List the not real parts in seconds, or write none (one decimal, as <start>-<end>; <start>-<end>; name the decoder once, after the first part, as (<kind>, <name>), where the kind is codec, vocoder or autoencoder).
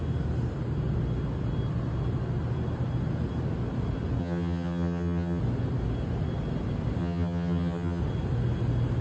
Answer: 4.2-5.4 (vocoder, HiFi-GAN); 7.0-8.0